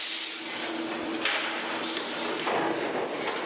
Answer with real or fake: real